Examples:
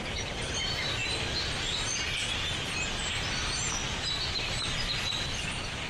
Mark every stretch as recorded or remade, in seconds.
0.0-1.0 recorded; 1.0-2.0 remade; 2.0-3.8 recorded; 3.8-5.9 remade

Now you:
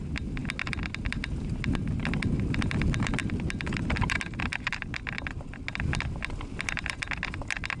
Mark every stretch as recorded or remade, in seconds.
0.0-3.2 recorded; 3.2-4.9 remade; 4.9-7.8 recorded

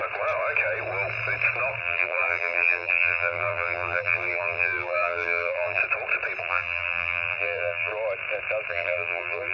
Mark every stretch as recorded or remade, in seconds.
0.0-1.8 recorded; 1.8-5.8 remade; 5.8-6.4 recorded; 6.4-7.9 remade; 7.9-8.7 recorded; 8.7-9.5 remade

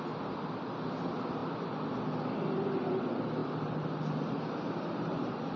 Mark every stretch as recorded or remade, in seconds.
0.0-3.4 recorded; 3.4-4.5 remade; 4.5-5.6 recorded